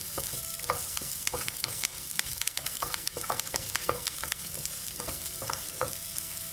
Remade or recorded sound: remade